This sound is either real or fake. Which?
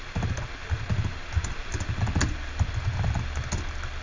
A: real